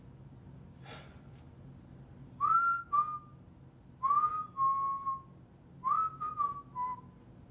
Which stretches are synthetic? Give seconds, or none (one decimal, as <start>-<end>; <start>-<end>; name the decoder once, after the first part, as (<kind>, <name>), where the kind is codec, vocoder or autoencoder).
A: none